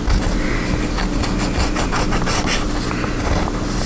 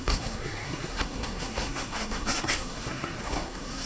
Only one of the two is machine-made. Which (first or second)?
second